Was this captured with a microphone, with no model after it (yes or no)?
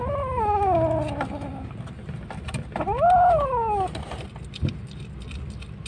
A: yes